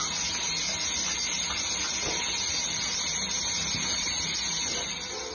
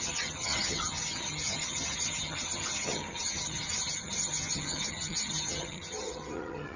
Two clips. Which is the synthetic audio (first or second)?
second